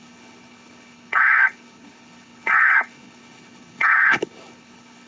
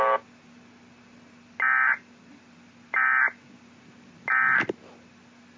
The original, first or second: second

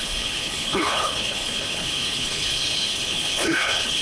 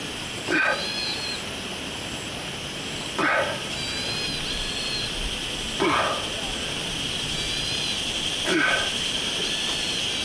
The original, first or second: second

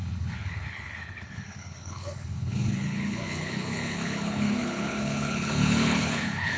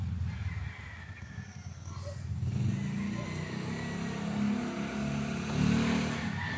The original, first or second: second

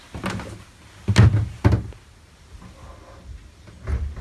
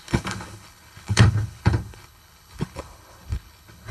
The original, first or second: first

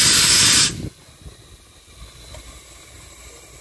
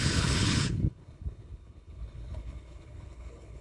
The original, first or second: first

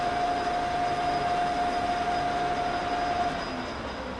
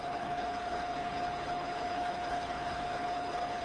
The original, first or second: first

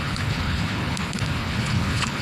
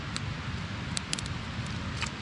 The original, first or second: second